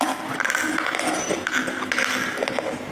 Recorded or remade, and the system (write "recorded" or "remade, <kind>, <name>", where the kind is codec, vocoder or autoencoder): recorded